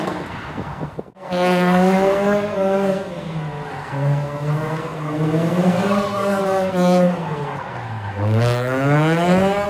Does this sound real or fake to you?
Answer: fake